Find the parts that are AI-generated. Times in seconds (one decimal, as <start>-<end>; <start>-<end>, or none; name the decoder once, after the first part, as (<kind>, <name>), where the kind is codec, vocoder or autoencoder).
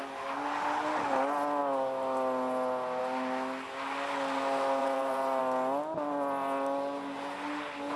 4.8-5.4 (vocoder, BigVGAN v2)